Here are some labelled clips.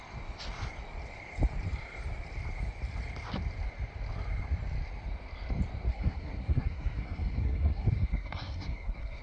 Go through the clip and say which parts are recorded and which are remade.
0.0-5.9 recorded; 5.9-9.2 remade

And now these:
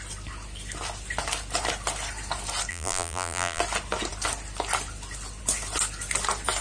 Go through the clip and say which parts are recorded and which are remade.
0.0-2.7 recorded; 2.7-3.6 remade; 3.6-6.6 recorded

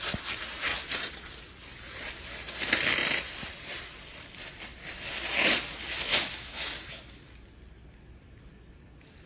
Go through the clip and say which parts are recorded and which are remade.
0.0-0.7 recorded; 0.7-1.3 remade; 1.3-9.3 recorded

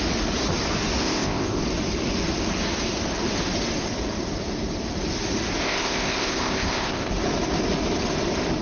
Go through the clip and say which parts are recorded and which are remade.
0.0-1.0 recorded; 1.0-1.6 remade; 1.6-5.6 recorded; 5.6-7.1 remade; 7.1-8.6 recorded

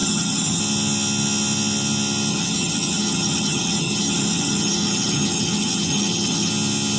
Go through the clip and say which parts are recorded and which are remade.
0.0-0.6 remade; 0.6-2.3 recorded; 2.3-6.5 remade; 6.5-7.0 recorded